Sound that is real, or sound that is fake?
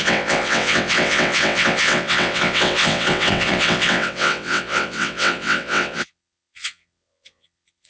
fake